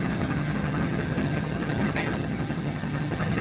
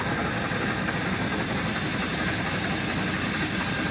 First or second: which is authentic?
second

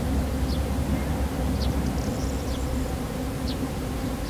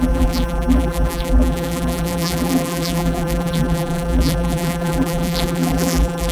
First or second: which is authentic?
first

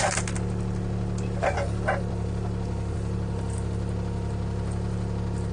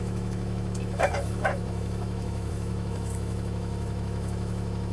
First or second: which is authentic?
first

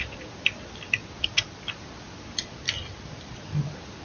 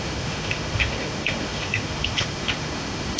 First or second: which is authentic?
first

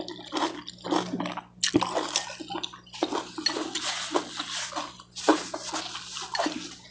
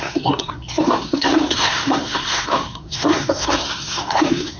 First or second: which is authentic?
first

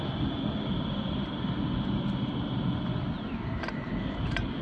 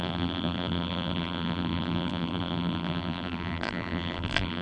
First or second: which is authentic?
first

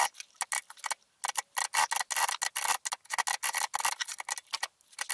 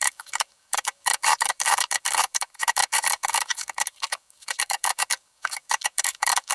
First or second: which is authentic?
first